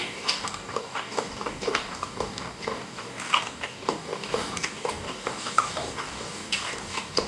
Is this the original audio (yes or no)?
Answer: no